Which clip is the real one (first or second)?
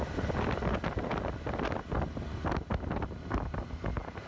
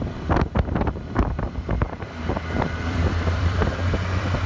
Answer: first